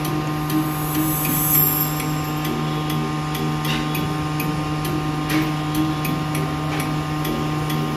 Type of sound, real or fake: real